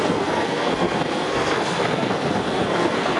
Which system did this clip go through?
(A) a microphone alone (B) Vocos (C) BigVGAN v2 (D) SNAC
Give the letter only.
D